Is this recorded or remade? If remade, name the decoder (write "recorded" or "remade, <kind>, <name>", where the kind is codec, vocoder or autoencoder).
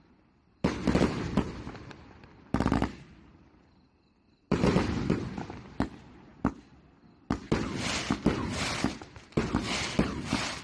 recorded